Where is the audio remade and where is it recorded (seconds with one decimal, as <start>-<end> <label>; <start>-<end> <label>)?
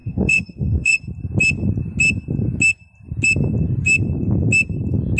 0.0-1.0 remade; 1.0-5.2 recorded